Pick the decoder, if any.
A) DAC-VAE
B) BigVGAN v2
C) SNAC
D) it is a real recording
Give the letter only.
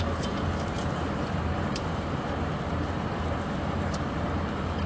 B